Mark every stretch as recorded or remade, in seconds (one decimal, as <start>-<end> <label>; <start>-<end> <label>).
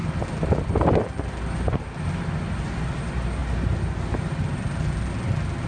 0.0-5.7 recorded